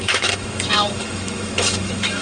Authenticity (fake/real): fake